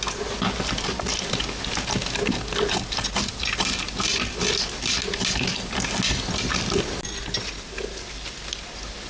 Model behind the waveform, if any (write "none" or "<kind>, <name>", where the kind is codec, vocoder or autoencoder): none